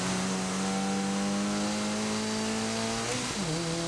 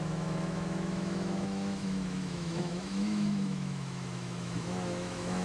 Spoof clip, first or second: second